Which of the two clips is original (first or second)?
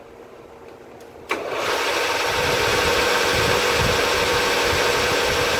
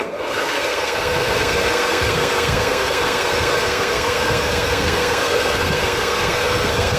first